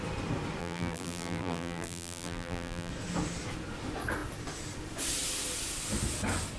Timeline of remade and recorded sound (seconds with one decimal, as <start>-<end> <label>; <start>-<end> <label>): 0.0-0.6 recorded; 0.6-2.9 remade; 2.9-6.6 recorded